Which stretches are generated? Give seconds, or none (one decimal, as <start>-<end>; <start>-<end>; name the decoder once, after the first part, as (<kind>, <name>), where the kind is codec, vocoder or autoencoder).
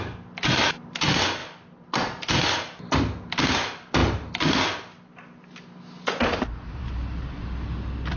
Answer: none